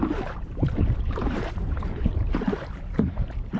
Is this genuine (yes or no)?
no